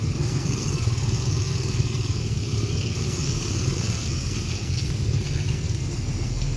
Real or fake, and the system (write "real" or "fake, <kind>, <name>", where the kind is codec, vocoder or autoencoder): fake, codec, SNAC